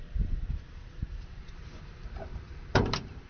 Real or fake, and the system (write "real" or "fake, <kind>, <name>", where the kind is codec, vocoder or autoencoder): fake, vocoder, BigVGAN v2